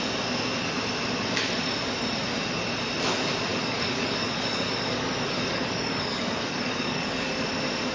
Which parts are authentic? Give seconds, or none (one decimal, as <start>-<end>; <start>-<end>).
0.0-3.5; 7.3-7.9